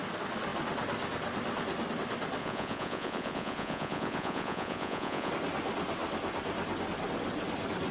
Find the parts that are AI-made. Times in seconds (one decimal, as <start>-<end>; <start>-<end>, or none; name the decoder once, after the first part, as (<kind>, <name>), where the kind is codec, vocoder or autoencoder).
2.4-5.3 (vocoder, Vocos)